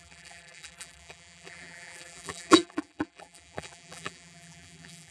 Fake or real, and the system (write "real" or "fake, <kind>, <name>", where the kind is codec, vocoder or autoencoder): fake, vocoder, BigVGAN v2